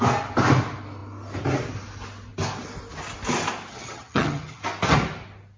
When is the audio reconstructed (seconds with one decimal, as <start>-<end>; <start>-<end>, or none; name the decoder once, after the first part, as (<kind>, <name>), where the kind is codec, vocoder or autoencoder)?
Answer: 3.7-4.6 (vocoder, HiFi-GAN)